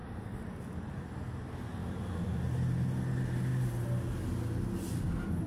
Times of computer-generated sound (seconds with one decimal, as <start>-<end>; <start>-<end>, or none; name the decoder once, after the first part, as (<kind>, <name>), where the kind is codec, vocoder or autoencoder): none